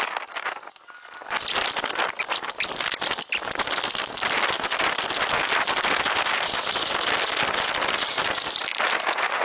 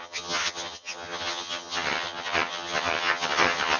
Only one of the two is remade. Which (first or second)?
second